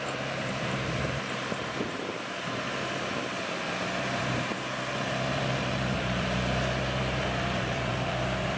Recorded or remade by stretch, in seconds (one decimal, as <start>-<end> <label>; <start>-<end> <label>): 0.0-8.6 remade